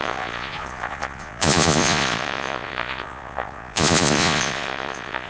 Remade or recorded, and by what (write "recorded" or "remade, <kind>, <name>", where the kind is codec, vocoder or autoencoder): remade, vocoder, Vocos